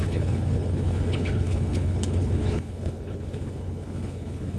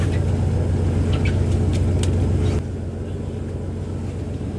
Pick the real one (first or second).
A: second